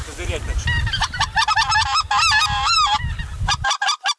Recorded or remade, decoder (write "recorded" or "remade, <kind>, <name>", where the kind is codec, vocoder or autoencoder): recorded